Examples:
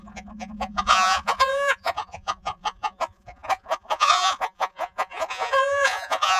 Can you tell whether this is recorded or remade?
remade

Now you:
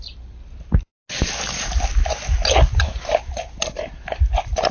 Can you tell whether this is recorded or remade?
recorded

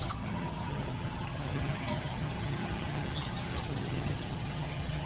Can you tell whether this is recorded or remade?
remade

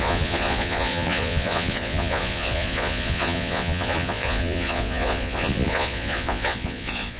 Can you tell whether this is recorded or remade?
remade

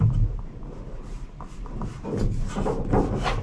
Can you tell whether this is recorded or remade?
recorded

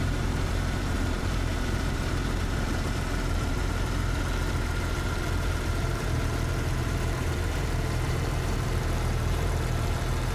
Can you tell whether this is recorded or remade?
remade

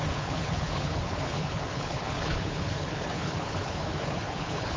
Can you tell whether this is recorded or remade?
remade